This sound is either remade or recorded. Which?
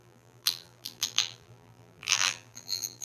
remade